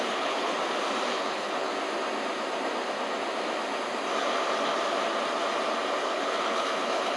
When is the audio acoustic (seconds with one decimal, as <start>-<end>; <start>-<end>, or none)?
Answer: 0.5-1.1; 1.7-6.0

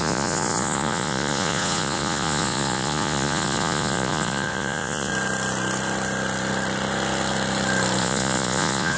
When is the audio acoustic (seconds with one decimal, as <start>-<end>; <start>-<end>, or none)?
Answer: 5.1-8.0

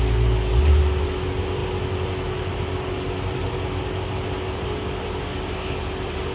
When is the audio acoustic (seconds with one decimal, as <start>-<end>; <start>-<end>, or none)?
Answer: 0.0-6.3

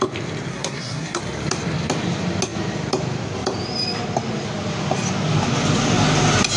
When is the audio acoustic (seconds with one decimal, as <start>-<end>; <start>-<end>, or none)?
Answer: 0.0-0.5; 1.2-6.6

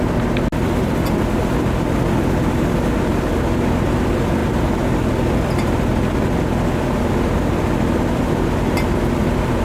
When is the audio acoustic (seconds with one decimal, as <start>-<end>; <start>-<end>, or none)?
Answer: 0.0-9.6